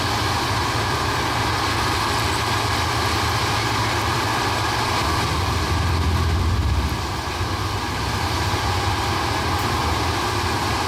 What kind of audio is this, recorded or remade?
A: remade